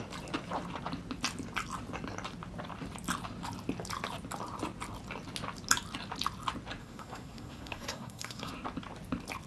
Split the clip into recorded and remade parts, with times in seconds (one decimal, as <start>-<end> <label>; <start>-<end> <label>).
0.0-6.8 recorded; 6.8-8.5 remade; 8.5-9.5 recorded